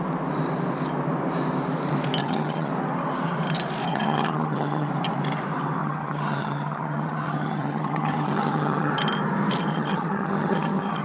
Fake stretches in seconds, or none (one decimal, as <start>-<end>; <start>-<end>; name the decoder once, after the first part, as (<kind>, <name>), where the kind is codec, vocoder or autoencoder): 2.2-2.7 (vocoder, HiFi-GAN); 3.9-4.9; 5.8-8.9; 9.7-11.0